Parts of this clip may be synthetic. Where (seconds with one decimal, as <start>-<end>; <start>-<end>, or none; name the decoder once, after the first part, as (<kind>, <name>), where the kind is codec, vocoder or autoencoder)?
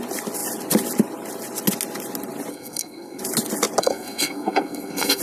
2.5-3.2 (codec, SNAC); 3.8-5.2